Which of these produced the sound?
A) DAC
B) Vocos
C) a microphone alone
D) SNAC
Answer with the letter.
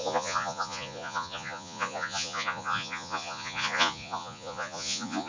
B